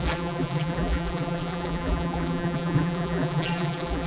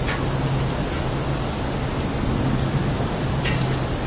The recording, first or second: second